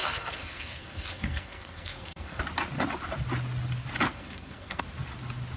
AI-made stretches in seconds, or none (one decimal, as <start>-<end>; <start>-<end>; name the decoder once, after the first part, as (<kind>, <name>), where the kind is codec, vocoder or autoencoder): 0.0-2.4 (codec, SNAC); 4.1-4.8